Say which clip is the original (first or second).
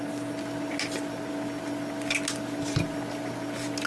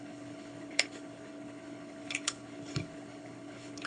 first